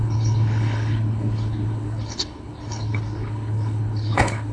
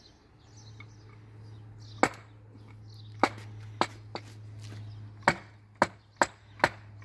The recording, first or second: second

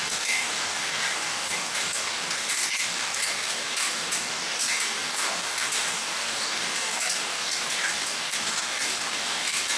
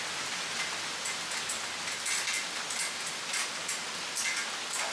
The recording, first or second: second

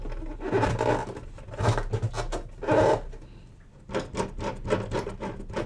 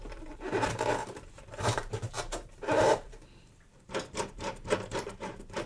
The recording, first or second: first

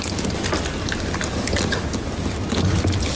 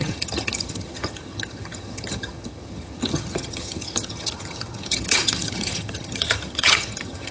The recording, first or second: first